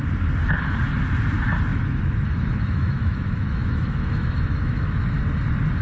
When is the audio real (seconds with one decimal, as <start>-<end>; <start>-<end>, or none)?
0.0-1.7; 5.2-5.8